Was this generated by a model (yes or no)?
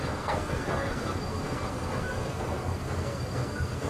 yes